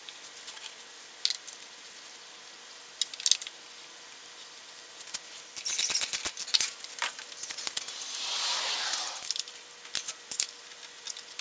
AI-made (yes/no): no